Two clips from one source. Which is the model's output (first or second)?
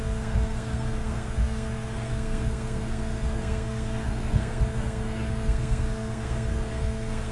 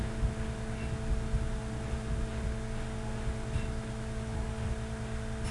first